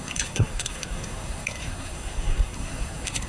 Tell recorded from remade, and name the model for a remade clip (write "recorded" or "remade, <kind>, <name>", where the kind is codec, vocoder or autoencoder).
remade, codec, SNAC